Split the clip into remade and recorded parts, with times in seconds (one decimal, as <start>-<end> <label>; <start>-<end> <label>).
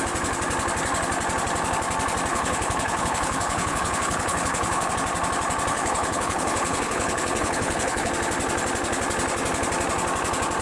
0.0-2.3 recorded; 2.3-4.9 remade; 4.9-5.7 recorded; 5.7-8.1 remade; 8.1-10.6 recorded